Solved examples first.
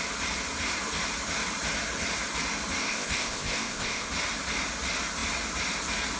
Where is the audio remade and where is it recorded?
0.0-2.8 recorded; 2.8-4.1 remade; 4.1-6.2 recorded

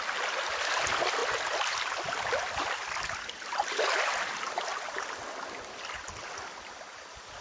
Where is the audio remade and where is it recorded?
0.0-7.4 recorded

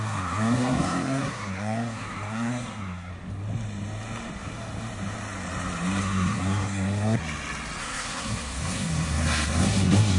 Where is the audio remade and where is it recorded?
0.0-3.1 remade; 3.1-6.0 recorded; 6.0-7.2 remade; 7.2-7.8 recorded; 7.8-10.2 remade

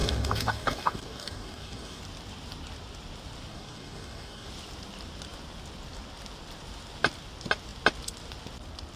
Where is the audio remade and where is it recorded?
0.0-2.0 remade; 2.0-3.5 recorded; 3.5-4.5 remade; 4.5-9.0 recorded